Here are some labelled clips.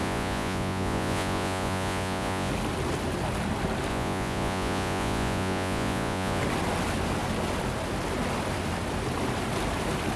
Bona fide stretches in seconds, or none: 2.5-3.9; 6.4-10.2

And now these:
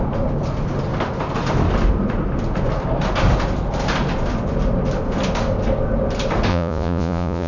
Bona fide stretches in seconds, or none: 0.0-6.5